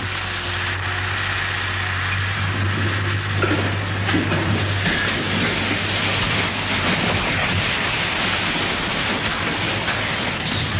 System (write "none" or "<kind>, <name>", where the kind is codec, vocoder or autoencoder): none